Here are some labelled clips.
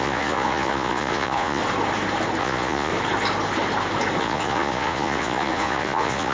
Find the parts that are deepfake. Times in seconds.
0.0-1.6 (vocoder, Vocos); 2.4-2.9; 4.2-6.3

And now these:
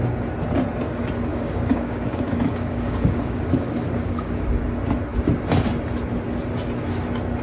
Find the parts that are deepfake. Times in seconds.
1.3-4.4 (codec, DAC)